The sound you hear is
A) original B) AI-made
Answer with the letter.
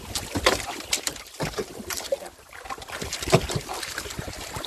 B